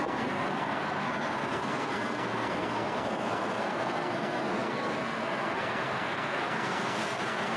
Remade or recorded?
remade